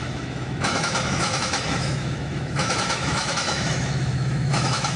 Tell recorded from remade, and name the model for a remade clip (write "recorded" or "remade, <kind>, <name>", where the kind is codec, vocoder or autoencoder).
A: remade, autoencoder, DAC-VAE